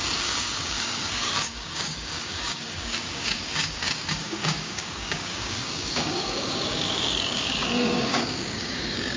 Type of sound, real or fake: fake